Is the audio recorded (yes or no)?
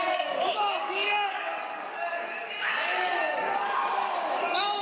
no